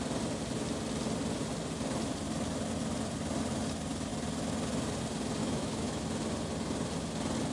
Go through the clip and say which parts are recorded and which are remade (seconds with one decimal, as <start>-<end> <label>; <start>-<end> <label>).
0.0-5.4 recorded; 5.4-6.0 remade; 6.0-7.5 recorded